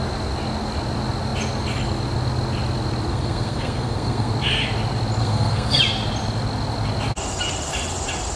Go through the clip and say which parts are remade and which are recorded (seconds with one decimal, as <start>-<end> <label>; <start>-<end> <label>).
0.0-3.1 recorded; 3.1-4.3 remade; 4.3-5.2 recorded; 5.2-5.8 remade; 5.8-8.4 recorded